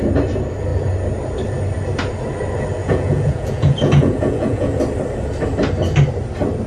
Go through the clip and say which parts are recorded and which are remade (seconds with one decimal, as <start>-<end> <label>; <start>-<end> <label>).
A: 0.0-2.8 recorded; 2.8-4.8 remade; 4.8-6.7 recorded